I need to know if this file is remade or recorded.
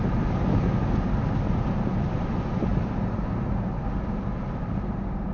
recorded